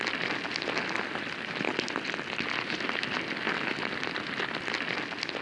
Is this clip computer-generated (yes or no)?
no